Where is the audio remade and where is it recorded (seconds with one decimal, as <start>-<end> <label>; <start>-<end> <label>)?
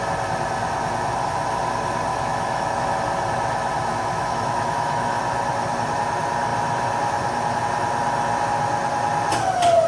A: 0.0-2.1 recorded; 2.1-3.0 remade; 3.0-3.9 recorded; 3.9-5.2 remade; 5.2-9.9 recorded